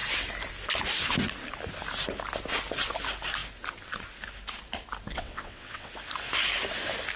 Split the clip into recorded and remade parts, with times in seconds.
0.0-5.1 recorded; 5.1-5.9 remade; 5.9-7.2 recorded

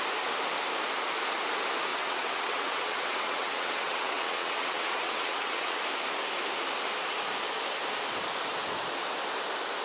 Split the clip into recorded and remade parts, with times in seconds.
0.0-1.9 recorded; 1.9-5.8 remade; 5.8-9.8 recorded

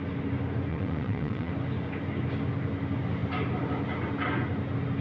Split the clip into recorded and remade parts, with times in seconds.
0.0-0.7 recorded; 0.7-1.5 remade; 1.5-5.0 recorded

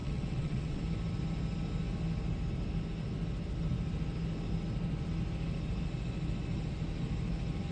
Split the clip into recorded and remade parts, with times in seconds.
0.0-0.8 remade; 0.8-7.7 recorded